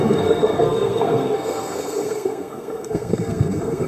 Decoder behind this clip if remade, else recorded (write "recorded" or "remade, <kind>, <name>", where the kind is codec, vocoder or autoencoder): remade, codec, SNAC